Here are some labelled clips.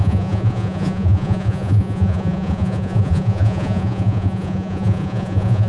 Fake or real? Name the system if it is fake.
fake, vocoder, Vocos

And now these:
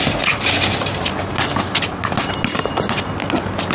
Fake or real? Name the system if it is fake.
real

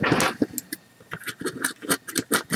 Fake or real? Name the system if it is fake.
real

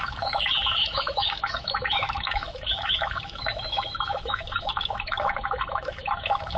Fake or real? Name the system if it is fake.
fake, autoencoder, DAC-VAE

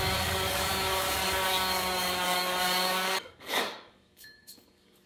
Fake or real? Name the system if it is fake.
fake, codec, DAC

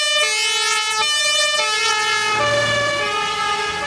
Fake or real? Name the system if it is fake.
real